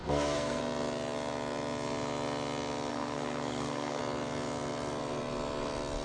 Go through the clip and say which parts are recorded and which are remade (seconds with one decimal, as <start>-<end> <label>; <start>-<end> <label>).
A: 0.0-0.6 remade; 0.6-2.9 recorded; 2.9-4.0 remade; 4.0-6.0 recorded